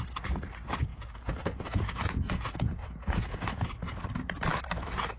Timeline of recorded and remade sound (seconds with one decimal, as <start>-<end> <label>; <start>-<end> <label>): 0.0-0.9 recorded; 0.9-4.0 remade; 4.0-5.2 recorded